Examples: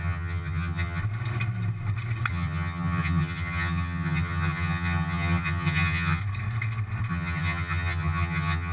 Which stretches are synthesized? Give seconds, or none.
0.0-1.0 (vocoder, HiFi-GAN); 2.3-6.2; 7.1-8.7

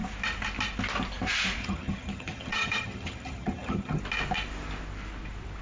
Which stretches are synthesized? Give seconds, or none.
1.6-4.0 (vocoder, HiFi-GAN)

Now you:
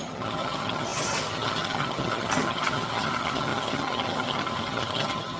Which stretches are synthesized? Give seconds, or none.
0.0-5.4 (vocoder, HiFi-GAN)

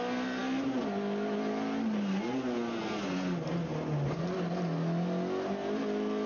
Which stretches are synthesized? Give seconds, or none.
none

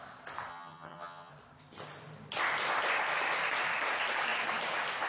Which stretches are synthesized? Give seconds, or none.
0.5-1.3 (vocoder, HiFi-GAN)

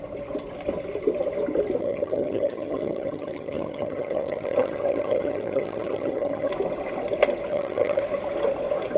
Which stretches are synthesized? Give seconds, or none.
1.8-6.5 (vocoder, HiFi-GAN); 7.5-8.0

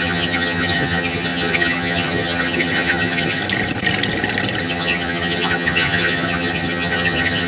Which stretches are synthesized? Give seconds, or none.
0.0-3.4 (vocoder, HiFi-GAN); 4.6-7.5

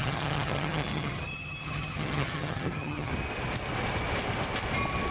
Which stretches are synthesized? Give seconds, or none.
0.0-3.1 (vocoder, HiFi-GAN)